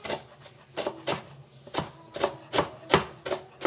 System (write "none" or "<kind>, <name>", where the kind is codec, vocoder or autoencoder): none